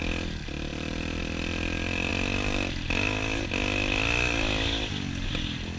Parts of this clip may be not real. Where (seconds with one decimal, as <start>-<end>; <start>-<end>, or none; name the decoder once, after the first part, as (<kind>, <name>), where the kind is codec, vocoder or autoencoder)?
0.7-1.2 (vocoder, BigVGAN v2)